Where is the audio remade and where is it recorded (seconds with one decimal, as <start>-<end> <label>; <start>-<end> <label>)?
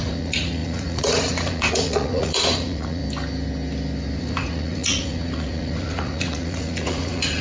0.0-3.0 remade; 3.0-4.2 recorded; 4.2-7.4 remade